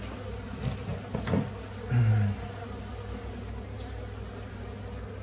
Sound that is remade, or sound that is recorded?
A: recorded